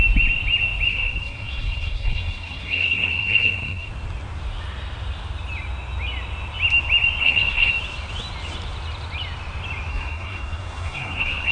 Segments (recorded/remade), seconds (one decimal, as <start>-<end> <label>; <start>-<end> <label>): 0.0-0.9 recorded; 0.9-3.9 remade; 3.9-7.2 recorded; 7.2-7.7 remade; 7.7-9.9 recorded; 9.9-11.5 remade